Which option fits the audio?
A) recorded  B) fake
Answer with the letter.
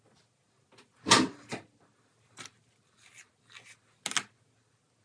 A